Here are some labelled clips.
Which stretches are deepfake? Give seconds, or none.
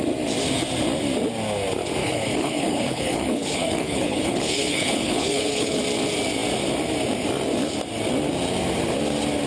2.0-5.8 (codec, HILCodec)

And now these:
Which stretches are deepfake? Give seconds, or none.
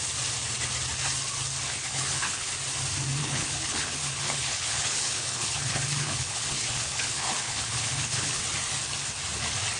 1.8-2.5 (codec, HILCodec); 3.2-8.4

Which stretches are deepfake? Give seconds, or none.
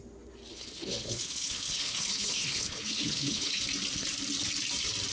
0.5-3.6 (codec, HILCodec)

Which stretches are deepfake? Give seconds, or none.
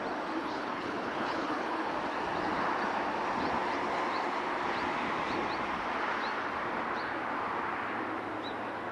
0.4-1.9 (codec, HILCodec)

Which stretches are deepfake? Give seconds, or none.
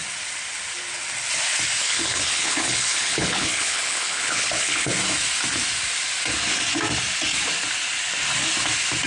1.8-4.9 (codec, HILCodec)